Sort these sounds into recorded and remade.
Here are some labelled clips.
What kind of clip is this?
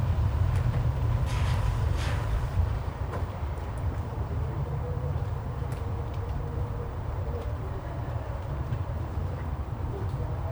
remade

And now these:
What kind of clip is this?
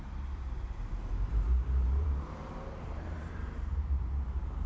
remade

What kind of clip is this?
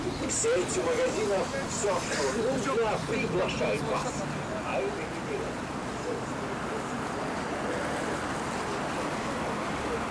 recorded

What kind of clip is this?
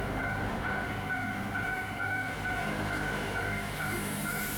remade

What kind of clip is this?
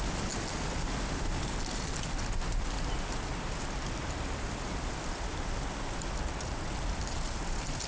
recorded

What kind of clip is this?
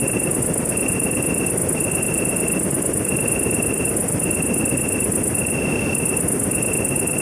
recorded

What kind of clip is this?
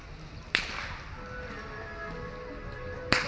recorded